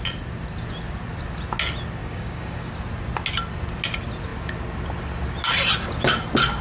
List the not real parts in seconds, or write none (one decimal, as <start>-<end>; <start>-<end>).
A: 2.0-2.7